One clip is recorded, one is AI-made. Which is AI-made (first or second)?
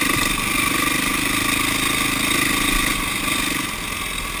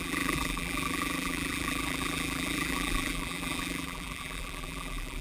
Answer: second